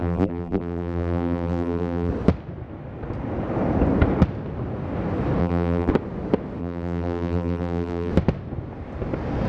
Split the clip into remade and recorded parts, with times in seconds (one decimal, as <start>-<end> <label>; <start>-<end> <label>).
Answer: 0.0-2.1 remade; 2.1-5.4 recorded; 5.4-5.9 remade; 5.9-6.6 recorded; 6.6-8.1 remade; 8.1-9.5 recorded